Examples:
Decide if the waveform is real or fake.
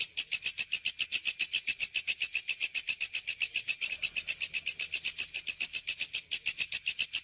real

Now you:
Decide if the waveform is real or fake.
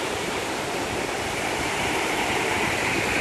fake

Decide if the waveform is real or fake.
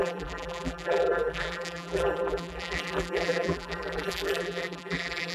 fake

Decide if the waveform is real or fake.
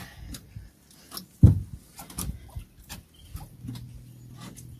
real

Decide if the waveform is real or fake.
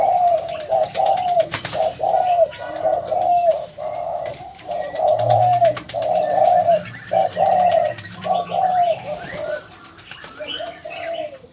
fake